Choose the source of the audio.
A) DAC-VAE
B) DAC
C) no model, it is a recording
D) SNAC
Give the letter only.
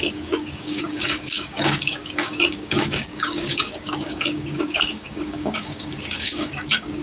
B